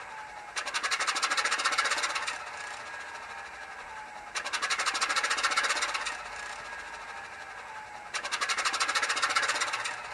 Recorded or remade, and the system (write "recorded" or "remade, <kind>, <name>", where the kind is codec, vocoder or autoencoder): recorded